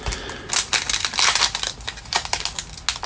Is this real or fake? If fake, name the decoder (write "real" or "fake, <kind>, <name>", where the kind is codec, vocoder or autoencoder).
real